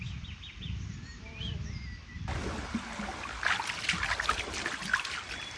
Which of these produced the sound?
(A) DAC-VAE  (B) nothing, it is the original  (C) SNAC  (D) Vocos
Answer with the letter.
B